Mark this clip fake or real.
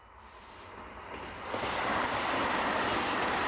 real